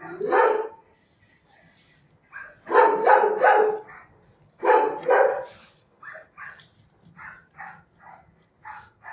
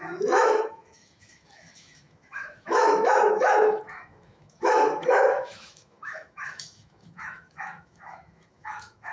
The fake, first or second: second